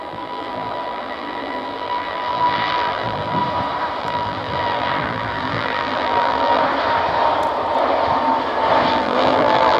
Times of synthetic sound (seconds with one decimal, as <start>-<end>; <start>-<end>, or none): 0.0-3.4; 4.0-6.6; 8.9-9.8